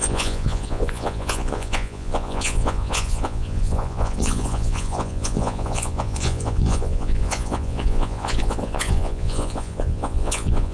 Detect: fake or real fake